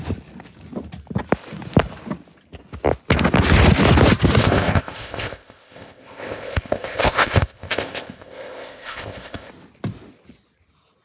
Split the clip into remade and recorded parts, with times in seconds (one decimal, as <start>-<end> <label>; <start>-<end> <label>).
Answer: 0.0-4.4 recorded; 4.4-9.5 remade; 9.5-11.0 recorded